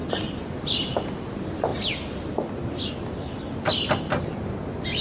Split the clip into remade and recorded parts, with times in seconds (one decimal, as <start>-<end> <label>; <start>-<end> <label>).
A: 0.0-5.0 recorded